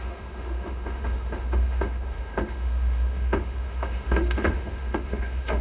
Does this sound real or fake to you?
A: fake